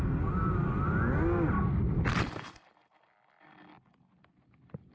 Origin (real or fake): real